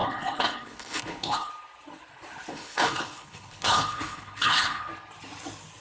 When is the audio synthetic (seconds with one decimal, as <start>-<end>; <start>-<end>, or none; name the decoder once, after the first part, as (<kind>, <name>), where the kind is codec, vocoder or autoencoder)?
0.0-1.5 (codec, HILCodec); 2.5-4.9